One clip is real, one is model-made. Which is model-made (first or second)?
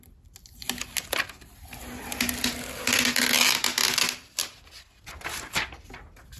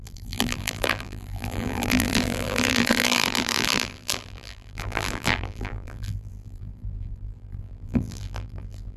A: second